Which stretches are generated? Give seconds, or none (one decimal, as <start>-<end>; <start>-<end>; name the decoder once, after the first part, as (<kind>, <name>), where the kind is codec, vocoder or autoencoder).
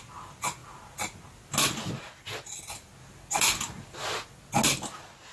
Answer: none